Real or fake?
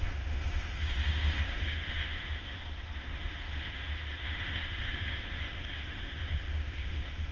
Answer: fake